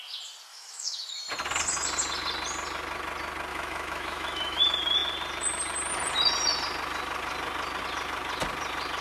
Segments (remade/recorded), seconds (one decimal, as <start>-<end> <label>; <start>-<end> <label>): 0.0-0.5 recorded; 0.5-1.2 remade; 1.2-3.5 recorded; 3.5-4.6 remade; 4.6-9.0 recorded